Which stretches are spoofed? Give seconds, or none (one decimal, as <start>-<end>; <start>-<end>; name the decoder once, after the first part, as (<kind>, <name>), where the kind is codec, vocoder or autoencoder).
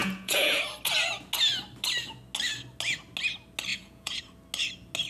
0.0-0.6 (vocoder, Vocos); 3.7-4.2